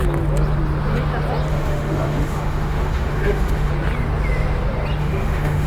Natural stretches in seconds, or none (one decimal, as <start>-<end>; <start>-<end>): 0.0-1.5; 3.7-5.0